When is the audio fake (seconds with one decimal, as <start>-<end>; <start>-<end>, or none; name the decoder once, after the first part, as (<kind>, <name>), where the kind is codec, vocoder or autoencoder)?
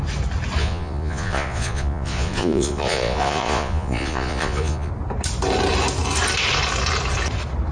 0.6-4.9 (vocoder, Vocos)